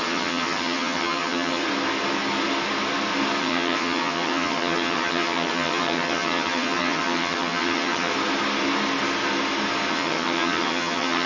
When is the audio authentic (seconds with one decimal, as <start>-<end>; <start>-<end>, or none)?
1.6-3.4; 8.1-9.9

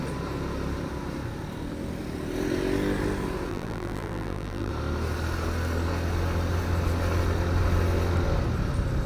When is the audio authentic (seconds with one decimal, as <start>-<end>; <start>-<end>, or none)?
0.0-3.5; 4.7-9.1

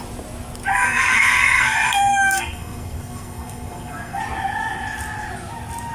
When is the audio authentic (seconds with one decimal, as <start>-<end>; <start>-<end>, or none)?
0.0-0.7; 4.2-5.9

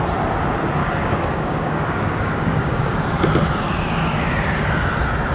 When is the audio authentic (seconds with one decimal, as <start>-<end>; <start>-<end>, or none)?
0.0-0.8; 2.9-5.3

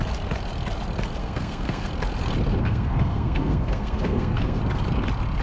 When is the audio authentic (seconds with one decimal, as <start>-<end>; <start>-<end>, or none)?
0.0-1.2; 1.9-2.5; 4.6-5.4

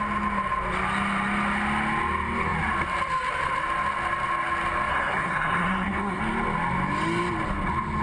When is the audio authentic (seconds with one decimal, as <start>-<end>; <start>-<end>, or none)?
0.0-4.9; 6.2-8.0